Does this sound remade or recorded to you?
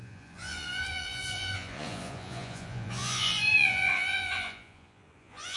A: remade